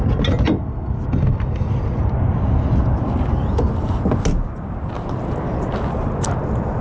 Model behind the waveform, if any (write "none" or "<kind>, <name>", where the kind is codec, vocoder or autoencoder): none